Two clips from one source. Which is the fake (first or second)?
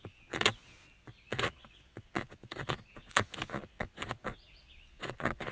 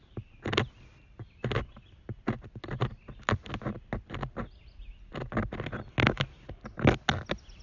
first